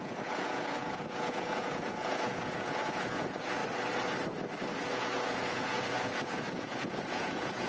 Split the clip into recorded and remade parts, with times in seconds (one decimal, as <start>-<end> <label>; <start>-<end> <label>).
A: 0.0-3.6 remade; 3.6-4.9 recorded; 4.9-7.7 remade